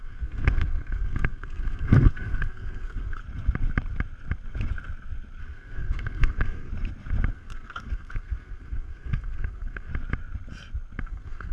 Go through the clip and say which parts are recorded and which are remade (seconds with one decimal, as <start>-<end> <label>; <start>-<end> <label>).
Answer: 0.0-3.2 remade; 3.2-5.4 recorded; 5.4-6.7 remade; 6.7-7.3 recorded; 7.3-9.9 remade; 9.9-11.0 recorded; 11.0-11.5 remade